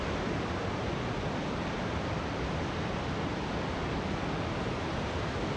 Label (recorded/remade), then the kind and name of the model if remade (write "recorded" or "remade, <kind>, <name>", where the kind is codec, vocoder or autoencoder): recorded